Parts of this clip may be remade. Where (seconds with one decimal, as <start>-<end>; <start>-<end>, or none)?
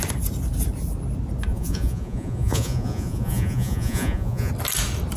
1.5-4.5